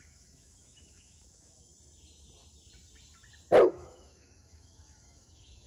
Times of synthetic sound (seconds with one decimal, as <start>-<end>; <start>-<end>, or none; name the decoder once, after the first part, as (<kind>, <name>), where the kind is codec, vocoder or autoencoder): 0.0-1.7 (autoencoder, DAC-VAE); 3.7-5.7